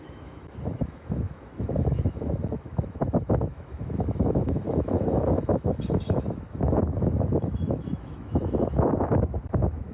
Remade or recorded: remade